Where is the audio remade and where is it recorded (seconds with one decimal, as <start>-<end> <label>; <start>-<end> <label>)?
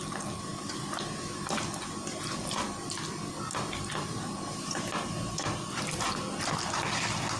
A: 0.0-7.4 recorded